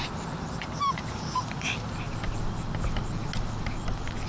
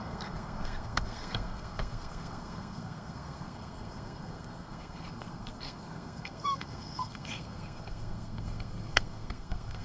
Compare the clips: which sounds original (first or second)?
first